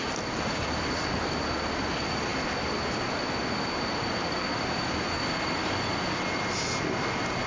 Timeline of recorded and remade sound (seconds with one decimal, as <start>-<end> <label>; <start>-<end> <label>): 0.0-7.5 recorded